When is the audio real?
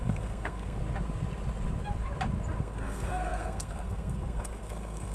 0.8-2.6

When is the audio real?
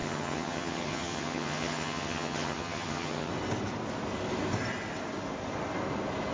3.3-6.3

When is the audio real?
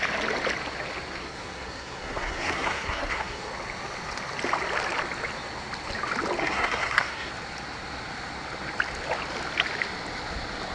0.0-1.2; 3.5-6.4; 7.3-10.7